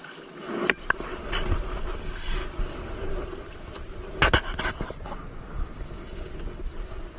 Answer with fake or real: real